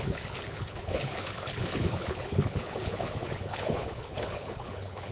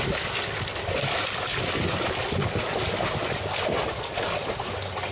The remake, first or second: first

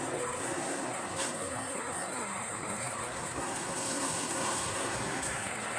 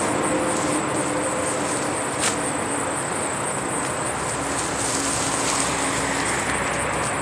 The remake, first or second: first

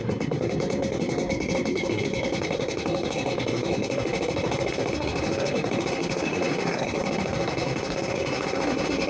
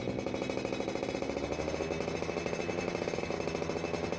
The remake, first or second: first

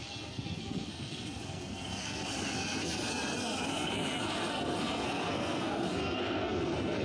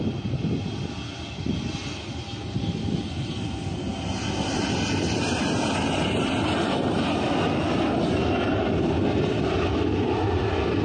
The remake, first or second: first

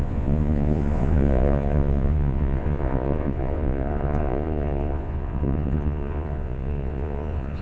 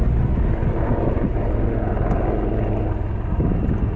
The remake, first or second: first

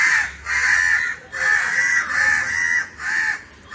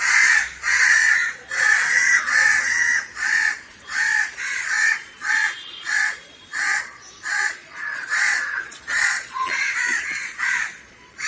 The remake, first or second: second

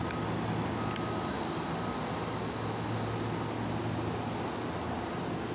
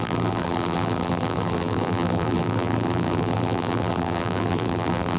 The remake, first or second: second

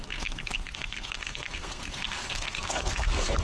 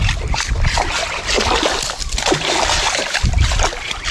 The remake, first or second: first